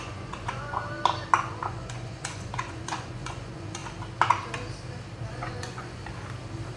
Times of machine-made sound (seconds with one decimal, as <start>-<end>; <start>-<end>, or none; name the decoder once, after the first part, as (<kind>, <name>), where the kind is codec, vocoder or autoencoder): 0.0-0.8 (vocoder, Vocos); 1.4-3.8; 5.3-6.0